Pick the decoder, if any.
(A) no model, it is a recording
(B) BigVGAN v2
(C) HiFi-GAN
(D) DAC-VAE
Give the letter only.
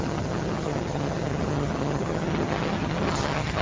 C